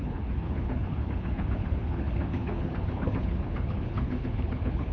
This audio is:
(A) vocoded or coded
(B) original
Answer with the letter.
A